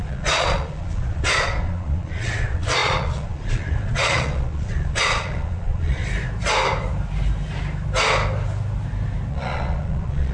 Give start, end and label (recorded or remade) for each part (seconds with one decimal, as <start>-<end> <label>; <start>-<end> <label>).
0.0-6.0 remade; 6.0-9.3 recorded; 9.3-10.3 remade